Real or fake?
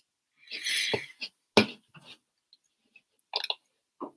real